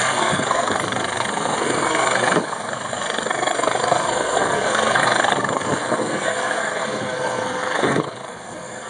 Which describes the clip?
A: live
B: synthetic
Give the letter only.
B